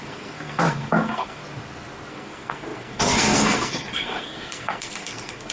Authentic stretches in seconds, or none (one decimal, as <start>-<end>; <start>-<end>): 1.4-2.1